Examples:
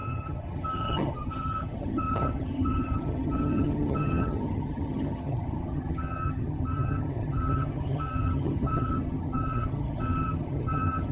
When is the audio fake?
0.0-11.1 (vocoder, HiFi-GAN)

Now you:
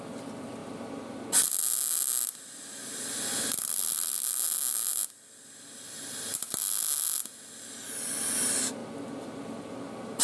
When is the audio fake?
none

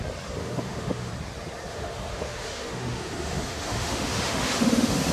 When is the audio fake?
0.4-1.1 (autoencoder, DAC-VAE); 1.7-5.1

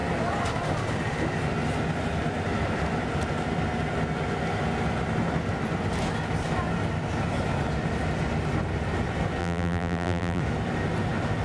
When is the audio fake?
9.4-10.4 (vocoder, BigVGAN v2)

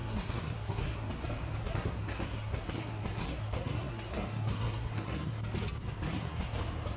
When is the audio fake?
0.0-1.1 (codec, SNAC); 1.6-5.4; 6.1-6.6

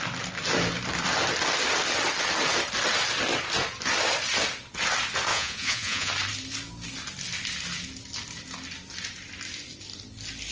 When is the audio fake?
5.3-6.1 (vocoder, Vocos)